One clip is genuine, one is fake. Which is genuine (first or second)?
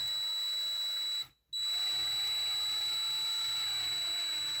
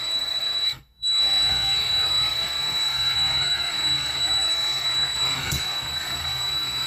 first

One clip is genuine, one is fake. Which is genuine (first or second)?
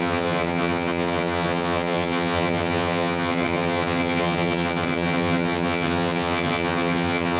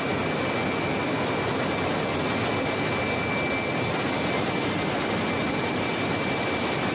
second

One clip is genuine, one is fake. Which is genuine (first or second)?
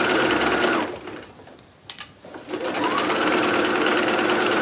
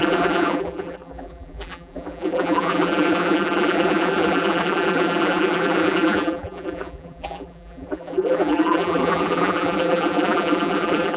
first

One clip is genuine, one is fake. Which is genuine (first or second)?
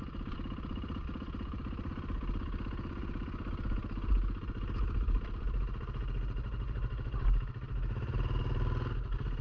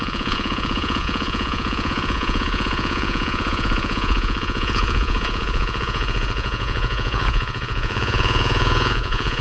first